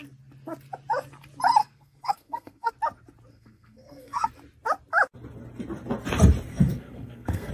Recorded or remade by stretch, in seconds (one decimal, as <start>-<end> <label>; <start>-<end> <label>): 0.0-1.6 recorded; 1.6-2.7 remade; 2.7-3.3 recorded; 3.3-4.3 remade; 4.3-6.5 recorded; 6.5-7.5 remade